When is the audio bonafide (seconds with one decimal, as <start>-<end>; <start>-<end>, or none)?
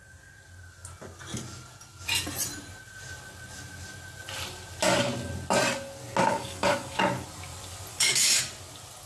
0.0-6.2; 7.0-7.9; 8.4-9.1